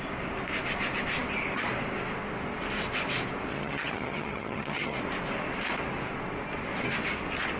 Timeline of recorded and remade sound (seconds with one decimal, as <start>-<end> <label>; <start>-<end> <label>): 0.0-3.5 recorded; 3.5-5.0 remade; 5.0-7.6 recorded